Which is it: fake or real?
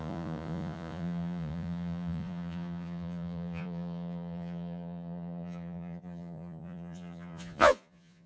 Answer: fake